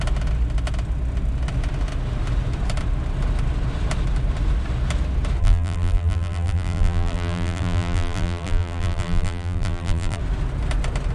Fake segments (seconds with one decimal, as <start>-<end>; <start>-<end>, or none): 5.4-10.2